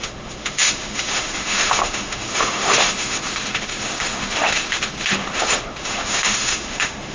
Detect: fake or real fake